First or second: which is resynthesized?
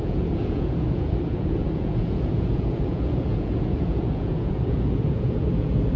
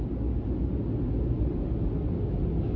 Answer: first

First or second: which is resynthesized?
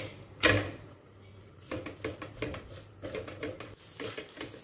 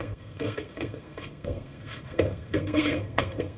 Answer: second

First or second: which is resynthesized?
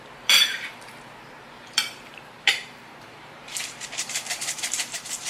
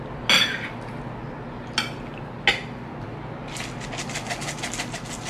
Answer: first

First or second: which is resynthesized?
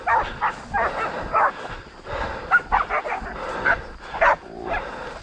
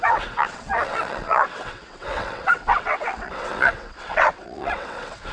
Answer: second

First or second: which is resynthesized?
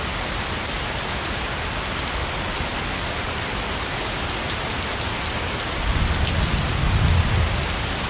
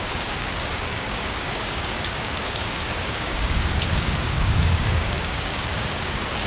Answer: second